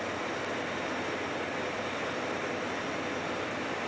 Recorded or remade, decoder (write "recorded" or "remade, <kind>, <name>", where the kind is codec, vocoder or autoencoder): recorded